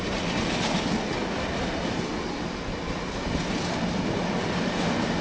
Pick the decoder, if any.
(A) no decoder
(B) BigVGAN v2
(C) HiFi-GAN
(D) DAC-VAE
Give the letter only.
A